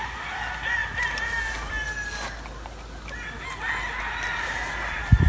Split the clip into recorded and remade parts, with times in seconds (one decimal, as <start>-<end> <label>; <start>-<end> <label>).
0.0-5.3 recorded